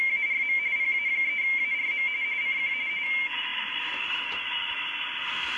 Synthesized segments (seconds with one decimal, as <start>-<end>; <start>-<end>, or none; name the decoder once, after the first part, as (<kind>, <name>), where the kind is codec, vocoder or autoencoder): 3.5-4.2 (vocoder, BigVGAN v2)